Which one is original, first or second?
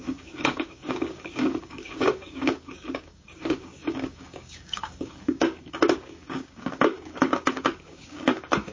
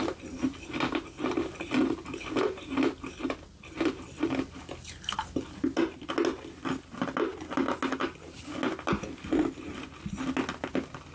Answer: second